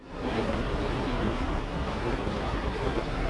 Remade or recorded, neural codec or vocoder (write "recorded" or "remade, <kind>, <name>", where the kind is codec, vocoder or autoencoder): remade, codec, SNAC